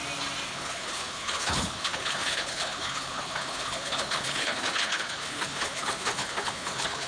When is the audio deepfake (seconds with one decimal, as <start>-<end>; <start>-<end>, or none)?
0.5-7.1